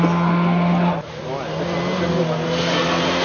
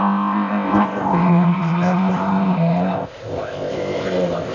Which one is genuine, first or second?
first